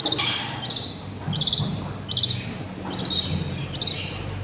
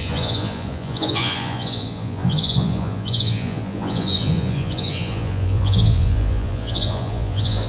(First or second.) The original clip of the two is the first